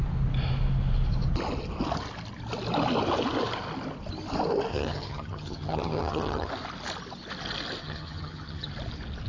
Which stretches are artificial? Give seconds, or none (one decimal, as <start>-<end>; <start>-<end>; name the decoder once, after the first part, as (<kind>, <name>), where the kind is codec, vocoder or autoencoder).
4.7-6.5 (vocoder, HiFi-GAN); 7.8-8.7